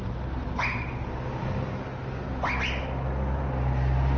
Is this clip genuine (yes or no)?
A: yes